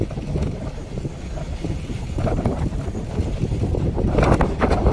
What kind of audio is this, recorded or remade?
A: recorded